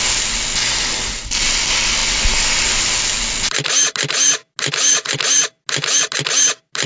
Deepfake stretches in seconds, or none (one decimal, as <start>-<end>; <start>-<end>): none